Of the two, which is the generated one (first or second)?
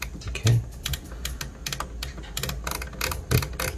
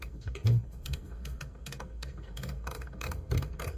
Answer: second